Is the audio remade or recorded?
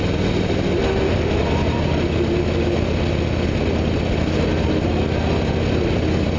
recorded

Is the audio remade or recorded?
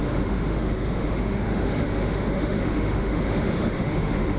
remade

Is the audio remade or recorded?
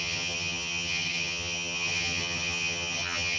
remade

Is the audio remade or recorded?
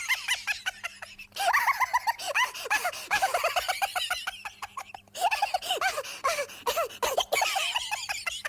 recorded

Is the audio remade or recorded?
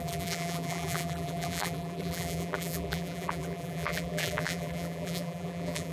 remade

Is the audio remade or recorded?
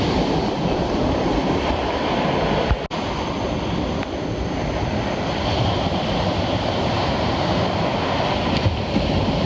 recorded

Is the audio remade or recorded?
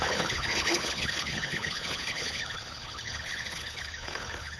remade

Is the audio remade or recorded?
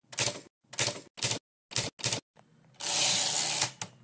recorded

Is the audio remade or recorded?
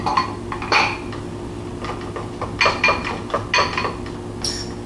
recorded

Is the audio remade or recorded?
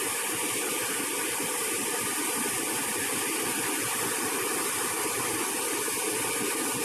recorded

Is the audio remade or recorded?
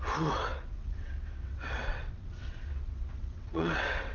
remade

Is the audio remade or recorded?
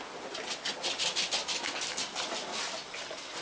recorded